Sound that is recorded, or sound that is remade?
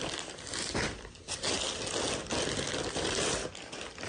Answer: recorded